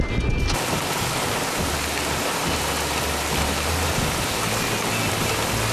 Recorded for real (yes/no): yes